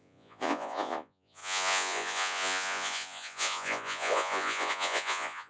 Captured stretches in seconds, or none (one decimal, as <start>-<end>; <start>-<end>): none